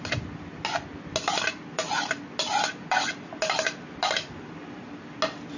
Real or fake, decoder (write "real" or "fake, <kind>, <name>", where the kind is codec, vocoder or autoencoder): real